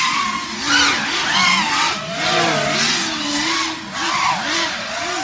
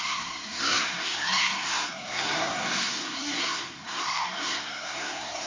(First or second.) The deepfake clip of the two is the second